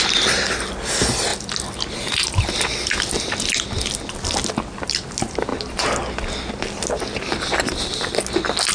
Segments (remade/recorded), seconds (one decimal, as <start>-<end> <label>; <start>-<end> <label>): 0.0-8.7 recorded